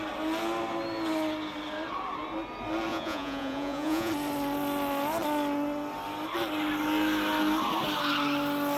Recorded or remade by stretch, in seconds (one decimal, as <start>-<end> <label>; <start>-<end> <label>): 0.0-2.9 recorded; 2.9-4.1 remade; 4.1-8.8 recorded